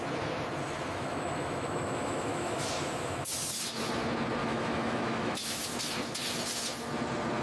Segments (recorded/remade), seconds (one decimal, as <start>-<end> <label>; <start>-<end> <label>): 0.0-0.9 recorded; 0.9-2.7 remade; 2.7-4.4 recorded; 4.4-5.6 remade; 5.6-7.4 recorded